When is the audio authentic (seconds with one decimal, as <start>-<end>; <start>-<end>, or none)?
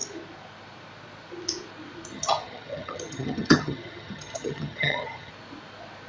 0.0-2.1; 5.3-6.1